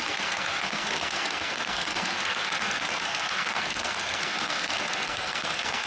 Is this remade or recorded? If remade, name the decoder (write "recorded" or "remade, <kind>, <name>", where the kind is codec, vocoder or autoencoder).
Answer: remade, codec, SNAC